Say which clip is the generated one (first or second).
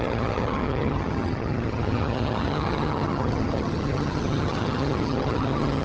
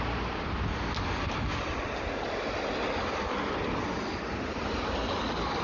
first